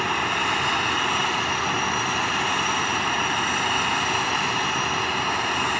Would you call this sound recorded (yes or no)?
yes